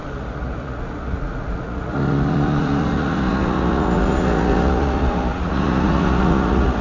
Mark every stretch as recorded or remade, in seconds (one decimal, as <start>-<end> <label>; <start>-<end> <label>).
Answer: 0.0-6.8 remade